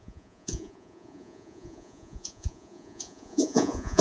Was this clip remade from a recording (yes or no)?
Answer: yes